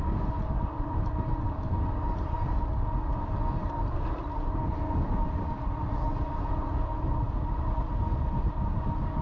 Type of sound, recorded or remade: recorded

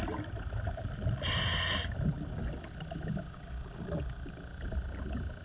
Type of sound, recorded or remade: recorded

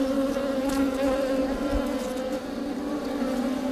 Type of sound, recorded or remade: recorded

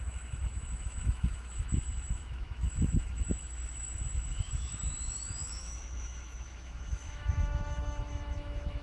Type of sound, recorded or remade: remade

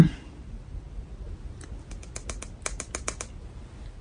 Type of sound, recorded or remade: recorded